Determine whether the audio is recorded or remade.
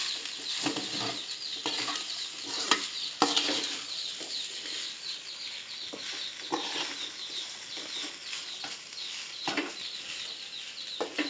recorded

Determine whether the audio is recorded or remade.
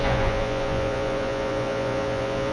remade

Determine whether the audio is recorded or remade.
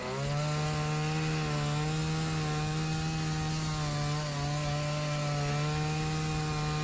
recorded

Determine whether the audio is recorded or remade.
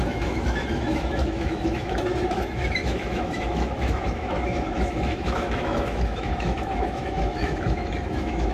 remade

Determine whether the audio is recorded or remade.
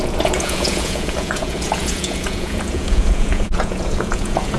remade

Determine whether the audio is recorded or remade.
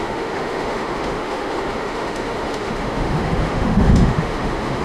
remade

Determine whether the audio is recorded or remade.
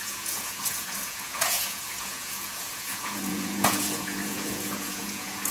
remade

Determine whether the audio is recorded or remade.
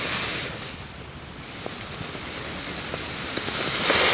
recorded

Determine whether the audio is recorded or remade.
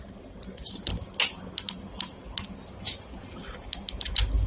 recorded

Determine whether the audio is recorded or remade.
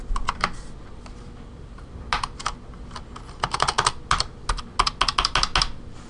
recorded